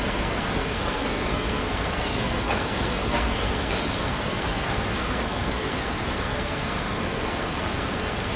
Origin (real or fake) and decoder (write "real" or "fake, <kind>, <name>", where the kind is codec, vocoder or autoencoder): fake, codec, SNAC